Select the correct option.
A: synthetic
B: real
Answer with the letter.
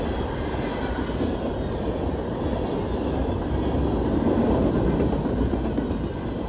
B